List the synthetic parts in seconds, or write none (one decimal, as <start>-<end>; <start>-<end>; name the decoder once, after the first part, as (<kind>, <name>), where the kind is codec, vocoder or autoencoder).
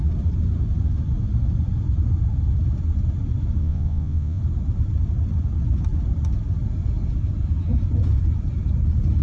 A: 3.6-4.4 (vocoder, Vocos)